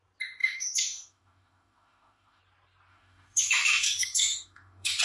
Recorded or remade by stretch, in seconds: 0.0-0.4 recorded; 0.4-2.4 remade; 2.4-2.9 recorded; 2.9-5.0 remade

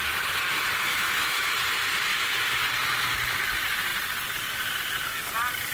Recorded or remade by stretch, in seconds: 0.0-0.9 recorded; 0.9-1.5 remade; 1.5-2.1 recorded; 2.1-2.6 remade; 2.6-5.7 recorded

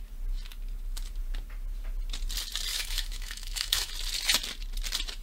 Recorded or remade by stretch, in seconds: 0.0-2.7 recorded; 2.7-3.9 remade; 3.9-5.2 recorded

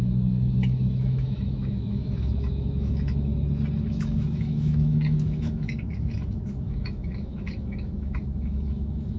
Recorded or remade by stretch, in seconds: 0.0-3.3 remade; 3.3-3.8 recorded; 3.8-9.2 remade

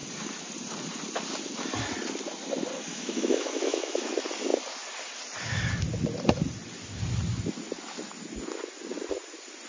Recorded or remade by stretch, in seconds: 0.0-2.9 recorded; 2.9-4.1 remade; 4.1-9.7 recorded

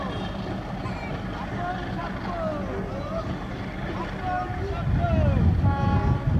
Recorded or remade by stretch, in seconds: 0.0-6.4 recorded

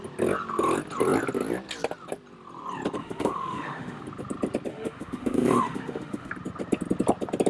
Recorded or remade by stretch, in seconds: 0.0-3.0 recorded; 3.0-4.0 remade; 4.0-4.7 recorded; 4.7-6.3 remade; 6.3-7.5 recorded

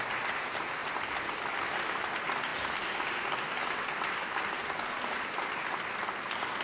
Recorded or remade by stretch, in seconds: 0.0-6.6 recorded